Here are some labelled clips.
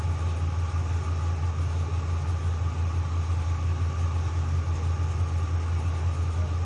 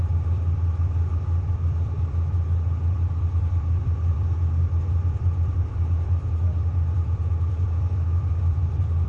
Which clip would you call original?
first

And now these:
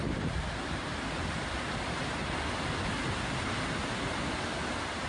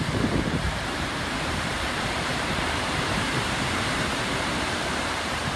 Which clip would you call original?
first